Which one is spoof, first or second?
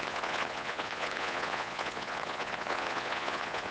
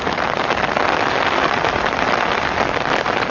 first